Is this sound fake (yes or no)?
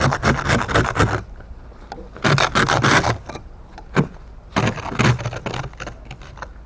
no